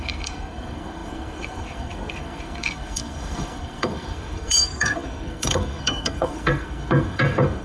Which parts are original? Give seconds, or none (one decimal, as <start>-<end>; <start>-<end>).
none